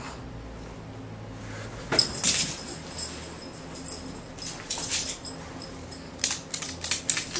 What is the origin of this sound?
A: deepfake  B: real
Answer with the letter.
B